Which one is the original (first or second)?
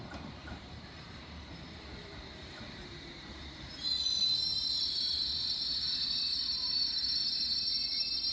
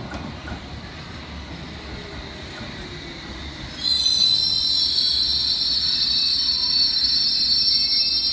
second